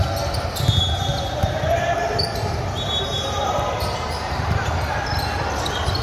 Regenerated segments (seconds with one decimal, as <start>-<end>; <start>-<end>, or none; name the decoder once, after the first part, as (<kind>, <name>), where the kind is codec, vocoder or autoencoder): 1.1-4.7 (vocoder, BigVGAN v2)